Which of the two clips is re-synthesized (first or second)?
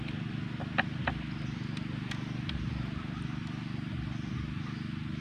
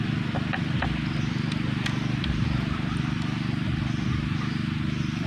second